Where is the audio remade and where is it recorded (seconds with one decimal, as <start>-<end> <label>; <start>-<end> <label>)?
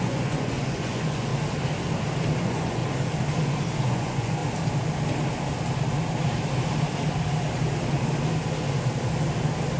0.0-1.3 remade; 1.3-2.4 recorded; 2.4-2.8 remade; 2.8-3.9 recorded; 3.9-4.4 remade; 4.4-9.8 recorded